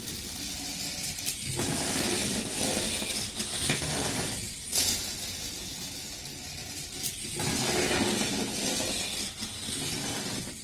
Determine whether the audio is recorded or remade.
recorded